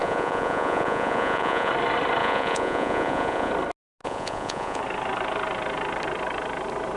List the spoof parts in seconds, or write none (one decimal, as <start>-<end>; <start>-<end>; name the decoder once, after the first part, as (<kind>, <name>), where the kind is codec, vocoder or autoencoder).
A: 0.0-1.7 (vocoder, Vocos); 2.2-3.5; 4.0-4.8